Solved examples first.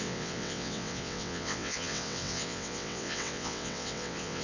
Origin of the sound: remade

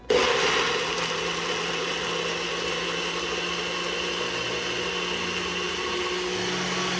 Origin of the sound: recorded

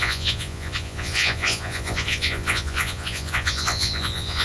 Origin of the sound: remade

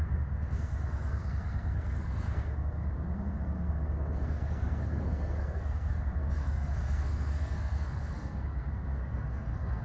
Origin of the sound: remade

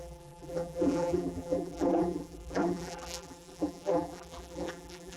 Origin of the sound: remade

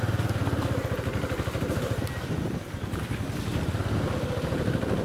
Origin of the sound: recorded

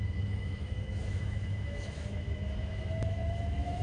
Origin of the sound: remade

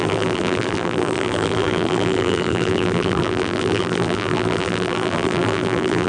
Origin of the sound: remade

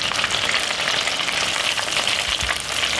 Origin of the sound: recorded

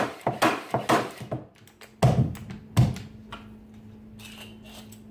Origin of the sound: recorded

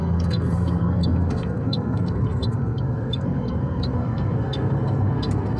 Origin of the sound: remade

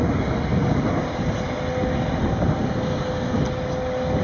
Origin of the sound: recorded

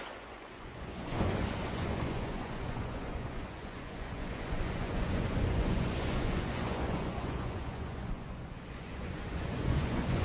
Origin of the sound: remade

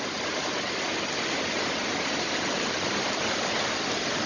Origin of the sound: recorded